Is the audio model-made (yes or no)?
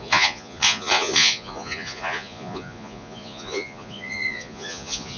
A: yes